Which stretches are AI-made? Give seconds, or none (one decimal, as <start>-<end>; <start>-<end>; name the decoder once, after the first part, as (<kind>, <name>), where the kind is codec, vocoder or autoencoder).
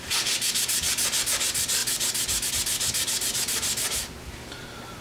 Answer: none